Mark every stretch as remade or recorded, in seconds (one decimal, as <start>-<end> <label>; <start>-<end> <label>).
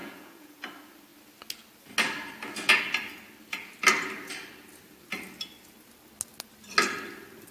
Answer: 0.0-0.6 remade; 0.6-7.5 recorded